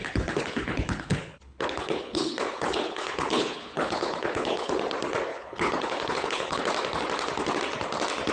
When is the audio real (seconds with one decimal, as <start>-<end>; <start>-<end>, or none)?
4.7-5.3; 6.6-8.3